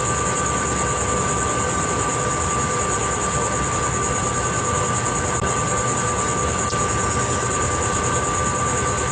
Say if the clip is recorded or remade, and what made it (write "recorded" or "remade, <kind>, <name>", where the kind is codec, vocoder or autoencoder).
recorded